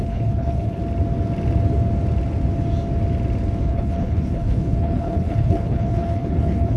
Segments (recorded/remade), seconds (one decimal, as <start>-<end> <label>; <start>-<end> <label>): 0.0-0.8 remade; 0.8-3.6 recorded; 3.6-6.8 remade